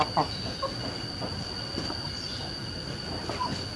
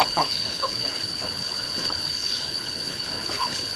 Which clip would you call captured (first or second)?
first